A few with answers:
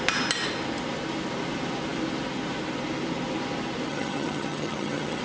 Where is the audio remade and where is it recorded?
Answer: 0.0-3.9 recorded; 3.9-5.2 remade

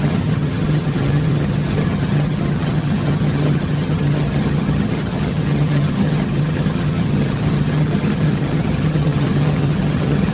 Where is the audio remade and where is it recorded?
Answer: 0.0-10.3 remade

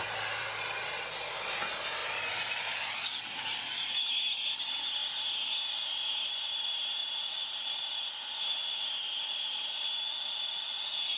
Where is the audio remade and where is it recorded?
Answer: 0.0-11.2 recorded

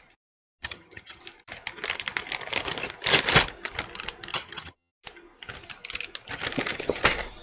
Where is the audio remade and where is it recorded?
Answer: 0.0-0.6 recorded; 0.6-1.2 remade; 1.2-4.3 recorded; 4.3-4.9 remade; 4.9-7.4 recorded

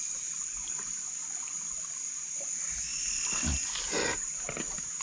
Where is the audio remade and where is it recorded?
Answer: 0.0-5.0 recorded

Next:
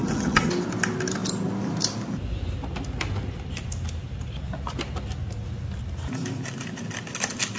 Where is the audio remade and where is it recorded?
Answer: 0.0-0.5 remade; 0.5-7.6 recorded

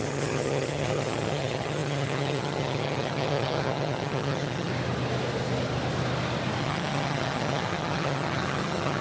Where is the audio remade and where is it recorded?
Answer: 0.0-4.7 remade; 4.7-6.6 recorded; 6.6-9.0 remade